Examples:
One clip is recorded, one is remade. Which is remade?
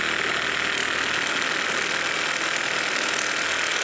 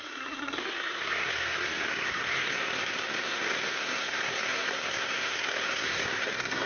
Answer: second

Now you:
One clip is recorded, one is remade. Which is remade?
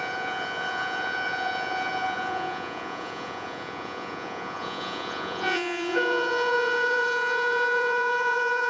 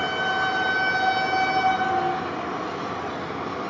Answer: first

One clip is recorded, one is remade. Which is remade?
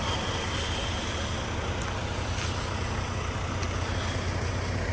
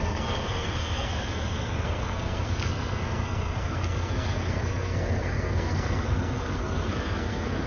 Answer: second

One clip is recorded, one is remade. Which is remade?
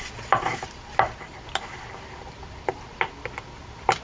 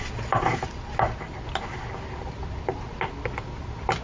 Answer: first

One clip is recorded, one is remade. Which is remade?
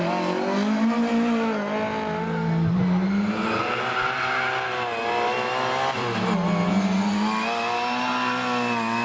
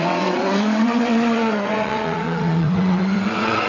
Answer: second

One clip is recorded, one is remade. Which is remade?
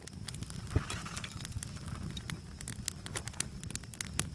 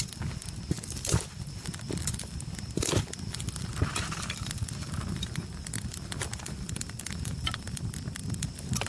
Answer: second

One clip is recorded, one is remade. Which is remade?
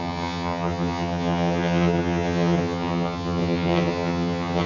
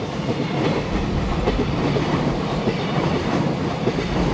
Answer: first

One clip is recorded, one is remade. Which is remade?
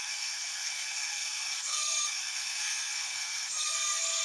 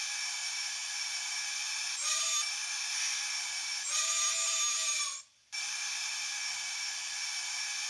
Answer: first